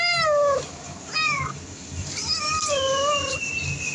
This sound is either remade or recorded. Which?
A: recorded